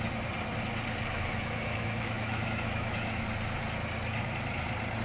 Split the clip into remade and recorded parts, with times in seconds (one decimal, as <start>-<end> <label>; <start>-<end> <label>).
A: 0.0-1.1 recorded; 1.1-3.2 remade; 3.2-5.0 recorded